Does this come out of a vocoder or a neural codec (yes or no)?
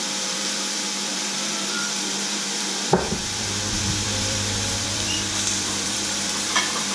yes